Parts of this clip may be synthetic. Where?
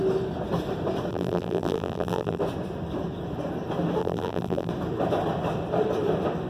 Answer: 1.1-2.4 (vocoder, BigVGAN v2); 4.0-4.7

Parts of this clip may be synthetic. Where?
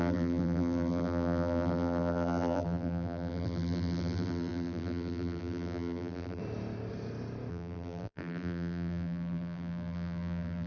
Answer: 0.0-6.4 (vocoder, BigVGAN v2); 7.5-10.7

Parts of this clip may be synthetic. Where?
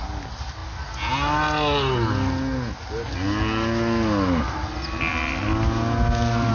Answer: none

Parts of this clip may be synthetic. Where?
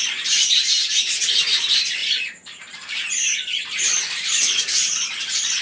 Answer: 0.0-0.7 (vocoder, BigVGAN v2); 1.6-5.6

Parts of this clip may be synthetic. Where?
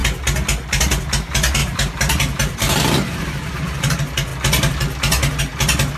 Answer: 1.6-3.8 (vocoder, BigVGAN v2)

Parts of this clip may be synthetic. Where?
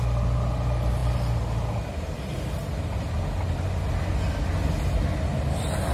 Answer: none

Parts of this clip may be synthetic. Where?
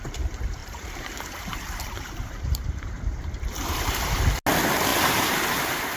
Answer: 0.6-4.2 (vocoder, BigVGAN v2); 4.9-6.0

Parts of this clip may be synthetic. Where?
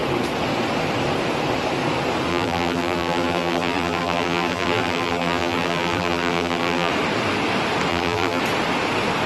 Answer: 2.3-6.9 (vocoder, BigVGAN v2); 7.9-8.4